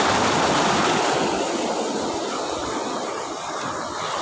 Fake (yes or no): no